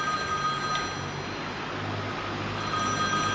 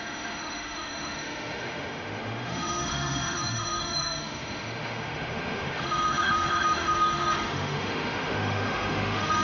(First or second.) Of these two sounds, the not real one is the second